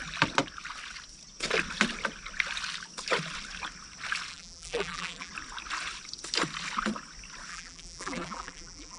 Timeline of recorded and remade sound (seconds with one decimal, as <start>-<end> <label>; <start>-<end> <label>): 0.0-4.3 recorded; 4.3-5.3 remade; 5.3-7.5 recorded; 7.5-9.0 remade